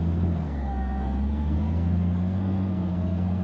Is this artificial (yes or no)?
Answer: yes